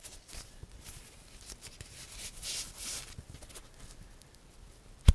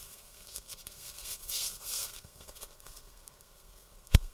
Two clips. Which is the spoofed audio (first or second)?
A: second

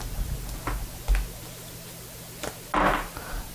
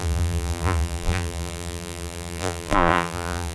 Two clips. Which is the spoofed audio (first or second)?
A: second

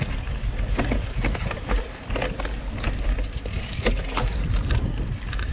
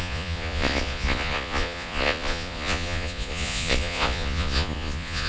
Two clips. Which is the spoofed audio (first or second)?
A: second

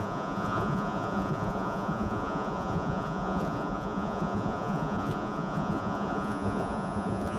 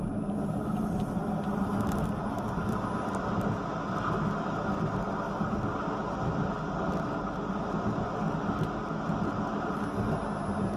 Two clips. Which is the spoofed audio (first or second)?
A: first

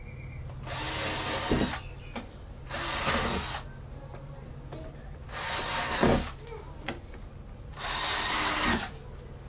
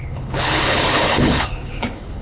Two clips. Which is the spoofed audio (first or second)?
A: second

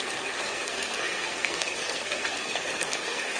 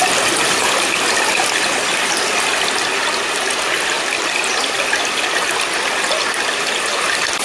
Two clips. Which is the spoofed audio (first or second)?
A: first